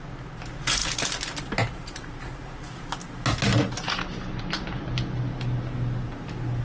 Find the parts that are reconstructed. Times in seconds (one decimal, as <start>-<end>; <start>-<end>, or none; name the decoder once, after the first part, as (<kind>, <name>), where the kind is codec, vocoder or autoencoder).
none